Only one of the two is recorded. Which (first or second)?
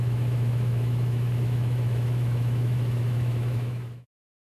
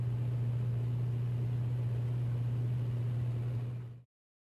second